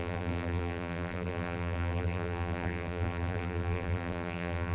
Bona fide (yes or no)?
no